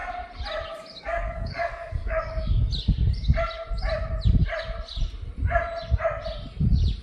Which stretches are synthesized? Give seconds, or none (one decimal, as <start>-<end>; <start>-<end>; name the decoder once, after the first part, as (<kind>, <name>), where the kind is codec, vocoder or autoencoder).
1.0-2.6 (codec, DAC)